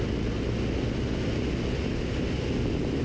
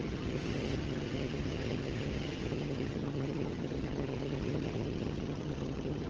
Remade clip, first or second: second